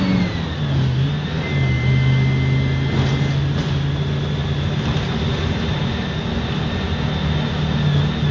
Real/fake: real